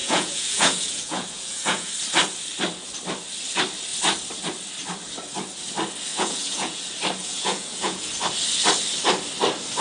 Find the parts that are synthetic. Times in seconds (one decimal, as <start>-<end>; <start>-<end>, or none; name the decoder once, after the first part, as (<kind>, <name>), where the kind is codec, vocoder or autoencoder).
0.0-1.9 (vocoder, Vocos); 6.1-6.8; 7.2-8.1